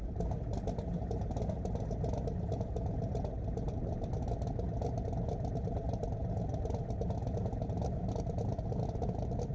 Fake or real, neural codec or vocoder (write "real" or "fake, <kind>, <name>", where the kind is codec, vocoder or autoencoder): real